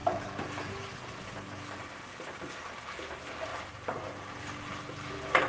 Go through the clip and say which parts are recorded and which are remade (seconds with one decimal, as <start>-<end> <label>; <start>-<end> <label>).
0.0-5.5 recorded